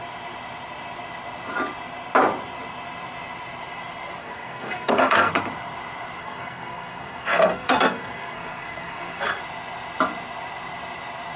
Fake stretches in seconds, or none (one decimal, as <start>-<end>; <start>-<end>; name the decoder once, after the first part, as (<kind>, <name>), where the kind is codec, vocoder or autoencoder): 4.2-5.3 (codec, SNAC); 6.2-9.4

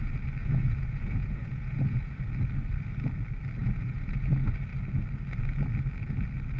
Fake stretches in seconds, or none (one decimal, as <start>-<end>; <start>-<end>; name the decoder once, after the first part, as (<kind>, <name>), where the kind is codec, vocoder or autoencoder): 0.4-2.2 (vocoder, Vocos); 3.6-4.3

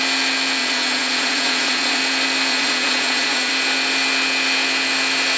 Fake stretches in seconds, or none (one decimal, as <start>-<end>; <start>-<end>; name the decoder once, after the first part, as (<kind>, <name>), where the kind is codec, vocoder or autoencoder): 0.6-2.0 (vocoder, Vocos); 2.5-3.5

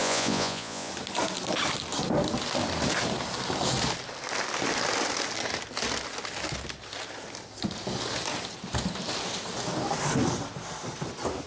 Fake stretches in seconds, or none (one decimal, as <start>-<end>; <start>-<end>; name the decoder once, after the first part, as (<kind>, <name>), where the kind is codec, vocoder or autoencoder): 0.0-0.9 (vocoder, Vocos)

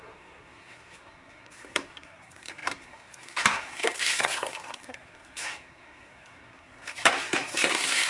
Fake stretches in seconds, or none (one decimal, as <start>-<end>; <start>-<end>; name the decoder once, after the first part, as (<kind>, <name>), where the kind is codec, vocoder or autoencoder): 0.0-8.1 (codec, SNAC)

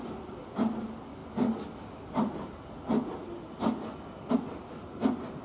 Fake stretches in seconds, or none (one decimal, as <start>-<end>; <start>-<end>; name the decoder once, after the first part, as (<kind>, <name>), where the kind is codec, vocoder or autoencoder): none

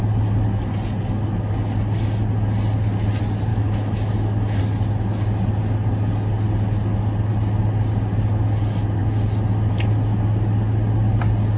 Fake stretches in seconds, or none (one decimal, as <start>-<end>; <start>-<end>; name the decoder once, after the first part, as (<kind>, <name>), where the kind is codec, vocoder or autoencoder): 3.5-4.6 (autoencoder, DAC-VAE)